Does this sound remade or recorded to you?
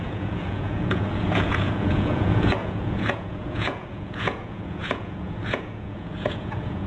remade